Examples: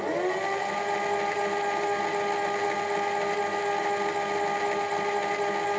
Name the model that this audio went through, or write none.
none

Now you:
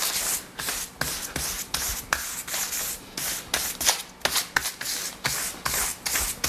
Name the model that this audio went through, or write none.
none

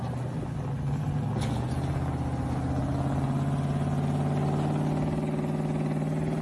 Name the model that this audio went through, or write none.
none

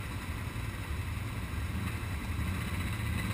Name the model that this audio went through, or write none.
none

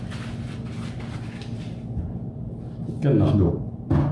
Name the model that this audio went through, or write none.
none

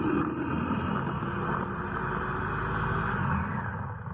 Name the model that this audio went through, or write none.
none